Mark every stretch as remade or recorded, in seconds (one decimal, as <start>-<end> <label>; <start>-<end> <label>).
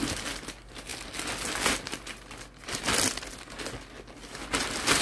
0.0-5.0 recorded